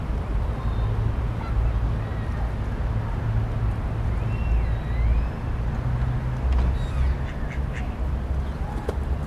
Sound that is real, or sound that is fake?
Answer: real